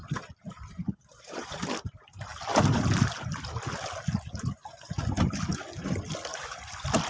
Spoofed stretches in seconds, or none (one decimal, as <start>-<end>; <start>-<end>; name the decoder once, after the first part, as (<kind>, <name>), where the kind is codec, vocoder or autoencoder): 0.9-1.6 (vocoder, Vocos)